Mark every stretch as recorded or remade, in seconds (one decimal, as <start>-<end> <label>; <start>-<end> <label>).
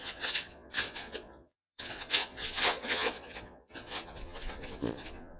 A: 0.0-5.4 remade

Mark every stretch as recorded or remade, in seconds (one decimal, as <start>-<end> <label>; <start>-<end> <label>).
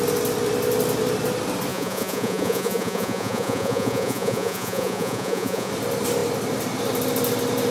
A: 0.0-1.7 recorded; 1.7-5.7 remade; 5.7-7.7 recorded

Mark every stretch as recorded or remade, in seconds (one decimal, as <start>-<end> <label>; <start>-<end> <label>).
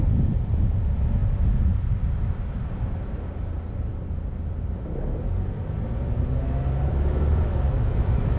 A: 0.0-8.4 recorded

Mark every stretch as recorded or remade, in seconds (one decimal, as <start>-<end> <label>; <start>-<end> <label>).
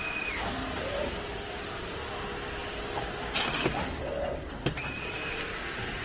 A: 0.0-6.0 recorded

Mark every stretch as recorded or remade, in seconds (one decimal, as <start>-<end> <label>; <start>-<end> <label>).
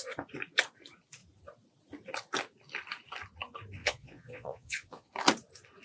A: 0.0-3.8 recorded; 3.8-5.1 remade; 5.1-5.8 recorded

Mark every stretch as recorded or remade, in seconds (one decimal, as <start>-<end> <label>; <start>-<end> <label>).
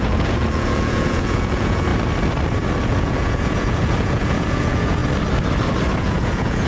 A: 0.0-1.9 remade; 1.9-2.8 recorded; 2.8-5.0 remade; 5.0-6.0 recorded; 6.0-6.7 remade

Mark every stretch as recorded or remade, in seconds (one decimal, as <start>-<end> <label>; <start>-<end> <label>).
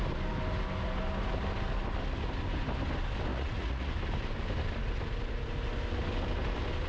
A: 0.0-3.3 recorded; 3.3-3.9 remade; 3.9-6.9 recorded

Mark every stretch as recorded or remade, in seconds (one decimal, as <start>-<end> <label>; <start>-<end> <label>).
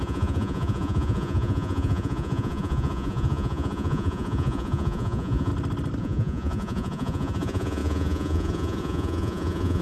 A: 0.0-5.5 remade; 5.5-6.0 recorded; 6.0-9.8 remade